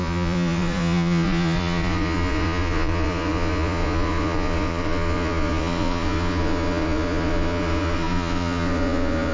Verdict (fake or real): fake